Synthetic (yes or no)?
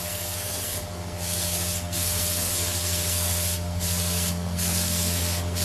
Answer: yes